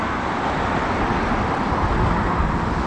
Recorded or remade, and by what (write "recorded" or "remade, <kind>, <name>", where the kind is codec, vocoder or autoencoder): recorded